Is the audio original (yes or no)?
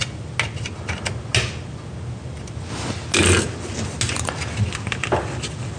yes